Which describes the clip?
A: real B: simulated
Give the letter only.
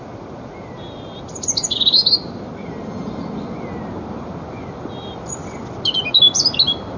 A